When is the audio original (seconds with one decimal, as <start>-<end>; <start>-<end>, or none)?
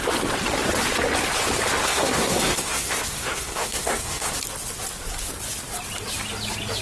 0.0-1.8; 4.3-6.8